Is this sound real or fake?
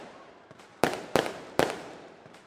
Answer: fake